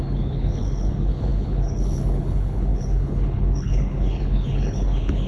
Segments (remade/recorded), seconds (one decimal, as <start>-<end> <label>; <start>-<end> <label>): 0.0-5.3 remade